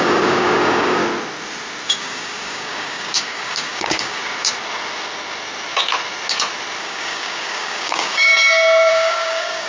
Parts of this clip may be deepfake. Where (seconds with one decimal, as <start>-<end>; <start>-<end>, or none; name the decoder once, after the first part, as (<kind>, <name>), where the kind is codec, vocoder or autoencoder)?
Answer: 0.0-1.0 (codec, DAC); 2.0-4.2; 6.8-8.3; 8.9-9.7